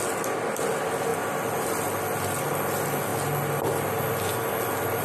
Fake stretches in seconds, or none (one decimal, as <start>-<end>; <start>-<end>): none